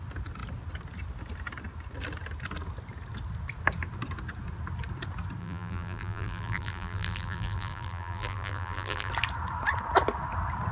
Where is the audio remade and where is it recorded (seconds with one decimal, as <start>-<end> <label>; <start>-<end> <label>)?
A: 0.0-5.4 recorded; 5.4-9.1 remade; 9.1-10.7 recorded